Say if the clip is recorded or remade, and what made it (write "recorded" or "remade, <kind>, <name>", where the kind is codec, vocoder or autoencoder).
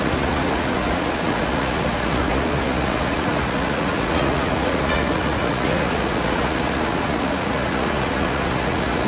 remade, vocoder, Vocos